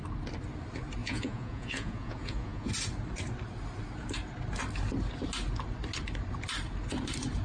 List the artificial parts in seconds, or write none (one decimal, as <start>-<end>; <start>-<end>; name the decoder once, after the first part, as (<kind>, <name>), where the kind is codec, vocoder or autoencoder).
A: 1.0-2.7 (vocoder, Vocos)